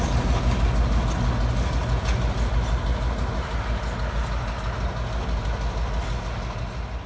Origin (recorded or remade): recorded